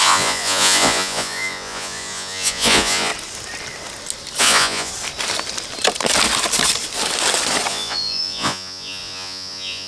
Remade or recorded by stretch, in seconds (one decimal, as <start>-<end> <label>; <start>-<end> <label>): 0.0-3.1 remade; 3.1-4.4 recorded; 4.4-4.9 remade; 4.9-7.7 recorded; 7.7-9.9 remade